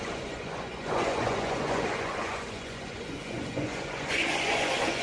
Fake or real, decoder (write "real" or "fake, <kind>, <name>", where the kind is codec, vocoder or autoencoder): fake, vocoder, Vocos